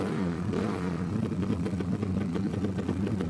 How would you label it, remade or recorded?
remade